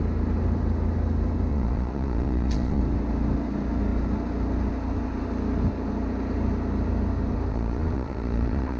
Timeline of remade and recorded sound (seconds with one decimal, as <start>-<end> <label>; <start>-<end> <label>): 0.0-1.5 recorded; 1.5-2.8 remade; 2.8-7.5 recorded; 7.5-8.8 remade